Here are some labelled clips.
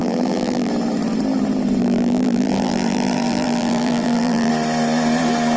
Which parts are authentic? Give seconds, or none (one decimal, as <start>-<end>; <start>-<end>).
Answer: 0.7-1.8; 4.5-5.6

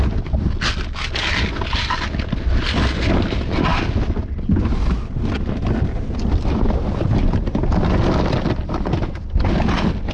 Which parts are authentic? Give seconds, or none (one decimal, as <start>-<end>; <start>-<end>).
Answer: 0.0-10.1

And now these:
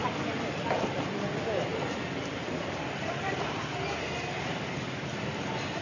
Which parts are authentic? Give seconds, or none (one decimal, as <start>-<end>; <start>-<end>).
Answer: 1.2-1.7; 3.4-5.8